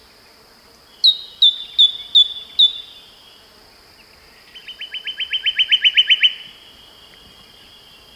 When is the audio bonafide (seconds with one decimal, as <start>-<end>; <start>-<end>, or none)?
0.0-8.2

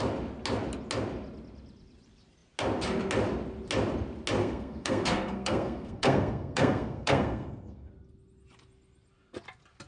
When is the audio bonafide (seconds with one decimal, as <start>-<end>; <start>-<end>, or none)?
0.0-4.4; 7.9-9.9